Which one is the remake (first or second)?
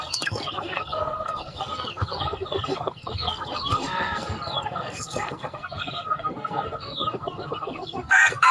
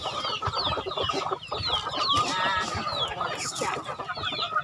first